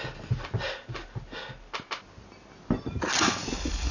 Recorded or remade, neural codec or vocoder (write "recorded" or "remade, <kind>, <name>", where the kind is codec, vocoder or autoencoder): recorded